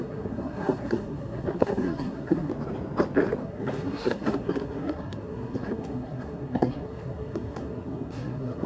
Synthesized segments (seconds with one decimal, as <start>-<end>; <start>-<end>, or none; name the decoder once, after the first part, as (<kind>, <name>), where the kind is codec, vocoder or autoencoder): 0.0-2.5 (codec, SNAC); 3.4-8.7